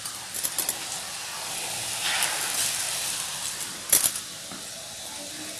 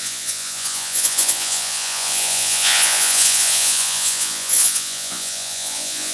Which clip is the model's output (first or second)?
second